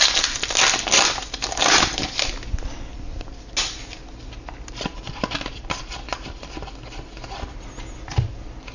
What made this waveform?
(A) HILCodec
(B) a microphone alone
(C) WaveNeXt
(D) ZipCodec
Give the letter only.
B